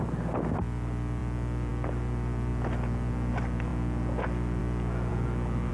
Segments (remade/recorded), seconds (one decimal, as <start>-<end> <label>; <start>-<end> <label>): 0.0-5.7 recorded